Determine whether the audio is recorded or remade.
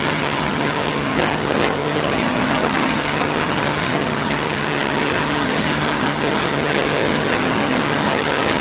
remade